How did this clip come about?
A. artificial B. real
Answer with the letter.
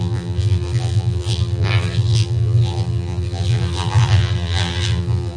A